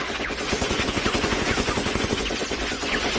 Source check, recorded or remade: remade